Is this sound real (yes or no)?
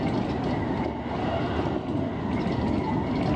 yes